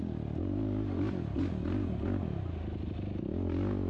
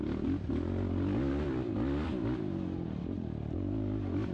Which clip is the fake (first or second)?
second